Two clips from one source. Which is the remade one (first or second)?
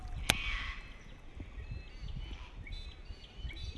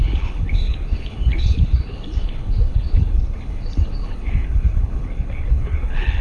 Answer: second